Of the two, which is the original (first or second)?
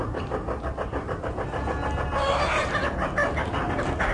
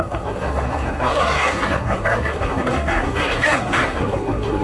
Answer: first